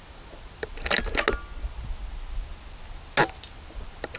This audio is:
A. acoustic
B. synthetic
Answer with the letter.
A